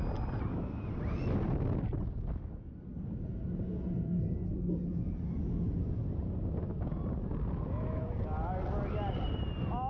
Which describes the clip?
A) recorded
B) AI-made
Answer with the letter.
A